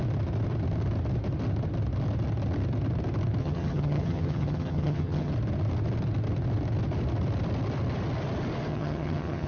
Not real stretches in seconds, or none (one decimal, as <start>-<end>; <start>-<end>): 3.4-5.3; 8.7-9.5